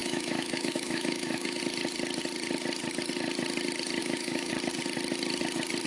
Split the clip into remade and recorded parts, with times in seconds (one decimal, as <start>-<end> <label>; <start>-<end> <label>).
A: 0.0-1.6 remade; 1.6-4.0 recorded; 4.0-4.5 remade; 4.5-5.9 recorded